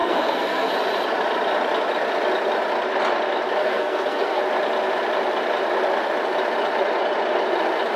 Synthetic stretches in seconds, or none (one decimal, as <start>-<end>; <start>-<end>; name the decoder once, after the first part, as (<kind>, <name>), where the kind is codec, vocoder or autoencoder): 0.0-0.7 (codec, SNAC); 3.6-4.4